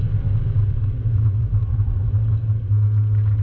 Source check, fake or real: real